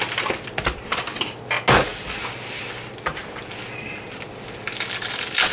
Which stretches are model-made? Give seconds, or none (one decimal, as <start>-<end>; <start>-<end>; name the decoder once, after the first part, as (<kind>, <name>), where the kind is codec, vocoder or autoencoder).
none